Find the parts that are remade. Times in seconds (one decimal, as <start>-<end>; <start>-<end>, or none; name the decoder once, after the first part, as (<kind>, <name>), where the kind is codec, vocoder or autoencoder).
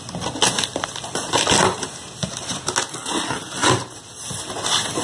3.6-4.3 (vocoder, BigVGAN v2)